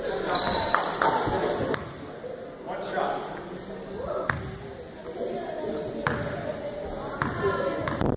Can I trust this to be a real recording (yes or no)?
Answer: yes